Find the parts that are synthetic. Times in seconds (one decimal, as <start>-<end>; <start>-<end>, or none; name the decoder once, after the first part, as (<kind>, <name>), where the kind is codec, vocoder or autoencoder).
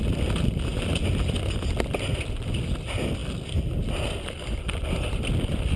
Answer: none